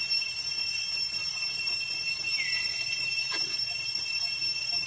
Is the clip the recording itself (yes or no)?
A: no